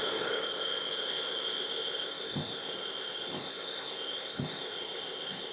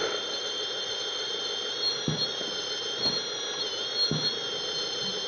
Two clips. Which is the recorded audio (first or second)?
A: second